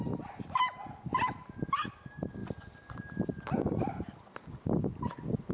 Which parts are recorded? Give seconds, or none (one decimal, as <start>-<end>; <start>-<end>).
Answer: 0.0-5.5